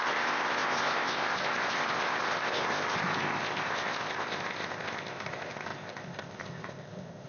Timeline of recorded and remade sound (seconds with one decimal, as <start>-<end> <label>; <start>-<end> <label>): 0.0-7.3 remade